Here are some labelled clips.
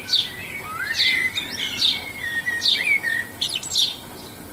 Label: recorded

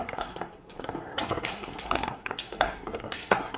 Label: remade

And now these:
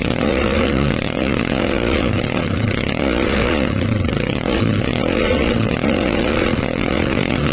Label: remade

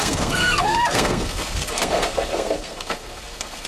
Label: remade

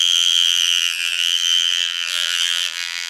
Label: remade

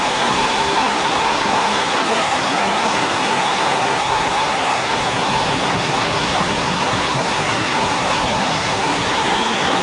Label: remade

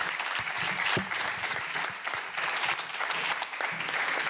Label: remade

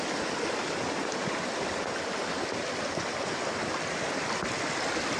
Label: recorded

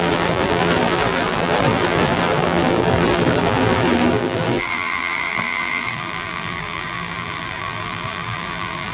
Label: remade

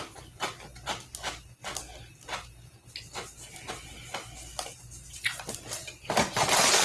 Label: recorded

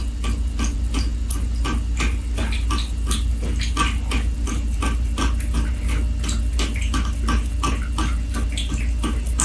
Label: recorded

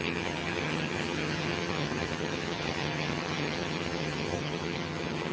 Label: remade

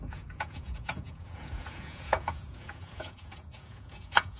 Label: remade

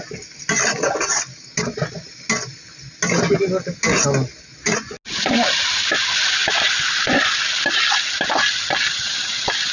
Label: recorded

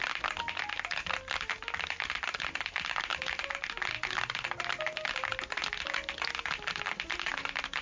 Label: recorded